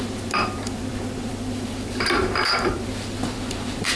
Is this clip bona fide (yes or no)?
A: no